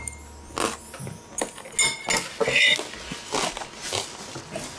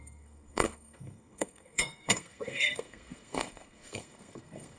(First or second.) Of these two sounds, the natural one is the first